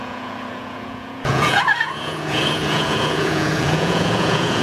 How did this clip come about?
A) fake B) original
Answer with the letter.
A